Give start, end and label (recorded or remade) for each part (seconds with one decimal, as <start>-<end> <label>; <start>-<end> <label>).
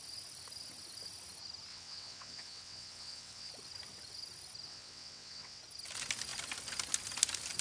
0.0-1.7 recorded; 1.7-3.5 remade; 3.5-4.7 recorded; 4.7-5.6 remade; 5.6-7.6 recorded